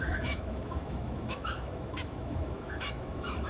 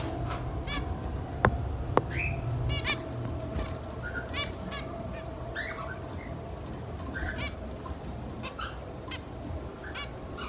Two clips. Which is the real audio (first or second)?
second